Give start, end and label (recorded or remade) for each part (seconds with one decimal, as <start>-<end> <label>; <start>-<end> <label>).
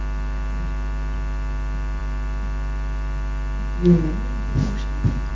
0.0-5.3 recorded